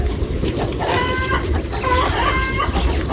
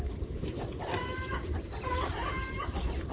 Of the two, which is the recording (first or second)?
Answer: first